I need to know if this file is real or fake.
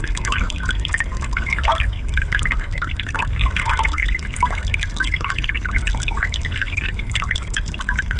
fake